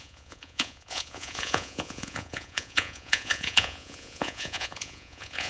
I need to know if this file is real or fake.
fake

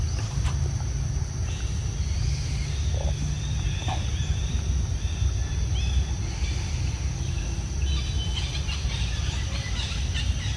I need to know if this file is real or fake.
real